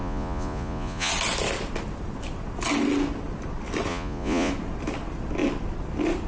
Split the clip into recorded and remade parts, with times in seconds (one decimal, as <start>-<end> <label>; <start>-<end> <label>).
0.0-1.1 remade; 1.1-3.9 recorded; 3.9-4.5 remade; 4.5-6.3 recorded